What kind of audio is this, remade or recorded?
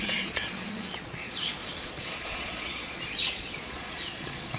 remade